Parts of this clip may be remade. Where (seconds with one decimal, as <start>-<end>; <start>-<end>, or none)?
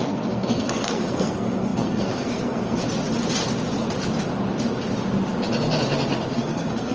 0.0-2.8; 6.3-6.9